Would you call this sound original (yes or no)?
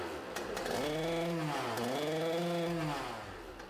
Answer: yes